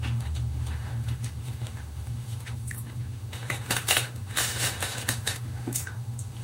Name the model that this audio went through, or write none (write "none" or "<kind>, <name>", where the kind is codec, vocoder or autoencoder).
autoencoder, DAC-VAE